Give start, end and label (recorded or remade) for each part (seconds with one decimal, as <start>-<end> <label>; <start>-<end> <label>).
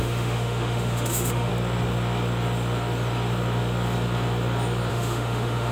0.0-1.5 remade; 1.5-4.9 recorded; 4.9-5.7 remade